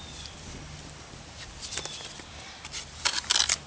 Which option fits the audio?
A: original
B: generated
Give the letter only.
B